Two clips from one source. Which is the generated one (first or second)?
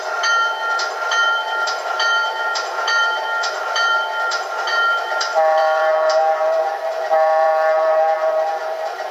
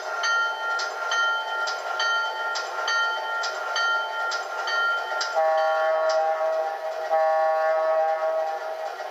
first